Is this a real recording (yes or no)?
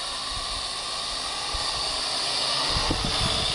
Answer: yes